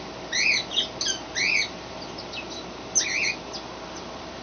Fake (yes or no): no